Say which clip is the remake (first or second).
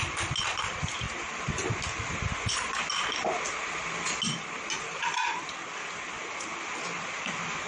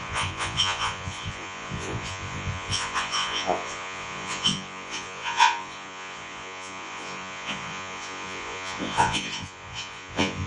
second